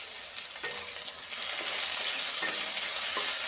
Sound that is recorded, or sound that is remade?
recorded